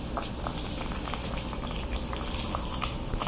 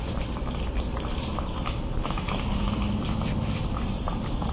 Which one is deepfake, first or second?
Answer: second